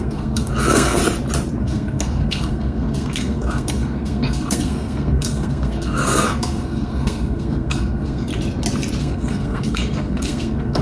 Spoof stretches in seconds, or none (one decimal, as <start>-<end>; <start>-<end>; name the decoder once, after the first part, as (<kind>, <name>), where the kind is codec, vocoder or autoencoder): 0.0-1.0 (codec, SNAC); 1.6-8.3; 9.0-10.8